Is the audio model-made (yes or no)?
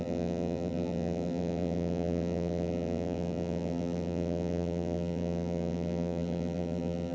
yes